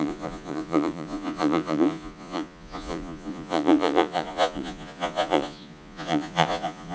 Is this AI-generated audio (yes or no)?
yes